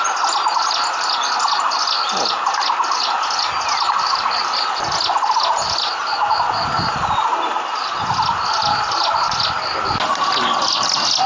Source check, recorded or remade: recorded